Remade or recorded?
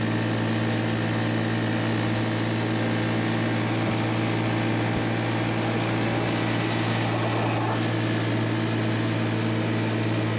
recorded